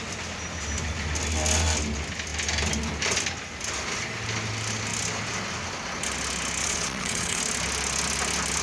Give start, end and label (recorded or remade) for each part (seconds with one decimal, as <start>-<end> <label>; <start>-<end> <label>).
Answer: 0.0-6.6 recorded; 6.6-7.4 remade; 7.4-8.6 recorded